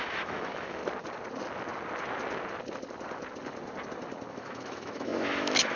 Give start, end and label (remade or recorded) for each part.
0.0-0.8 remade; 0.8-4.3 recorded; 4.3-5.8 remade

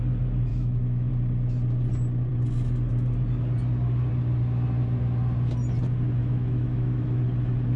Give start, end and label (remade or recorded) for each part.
0.0-0.5 recorded; 0.5-1.1 remade; 1.1-6.2 recorded; 6.2-7.2 remade; 7.2-7.8 recorded